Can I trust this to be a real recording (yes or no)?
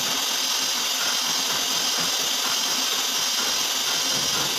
yes